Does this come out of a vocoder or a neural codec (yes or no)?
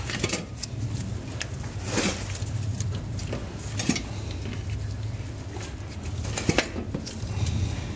no